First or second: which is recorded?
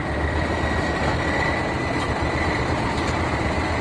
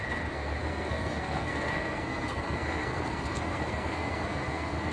first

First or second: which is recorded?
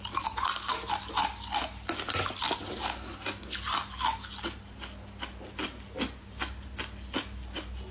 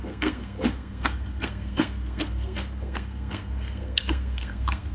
first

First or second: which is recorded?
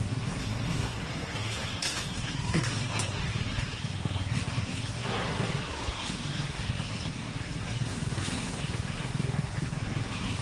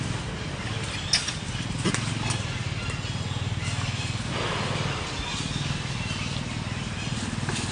second